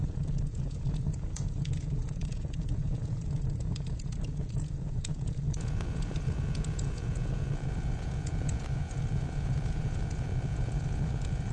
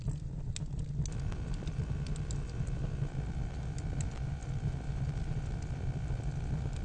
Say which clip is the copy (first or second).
first